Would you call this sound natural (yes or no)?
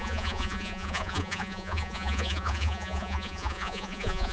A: no